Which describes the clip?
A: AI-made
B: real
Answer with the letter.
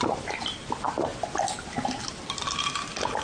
A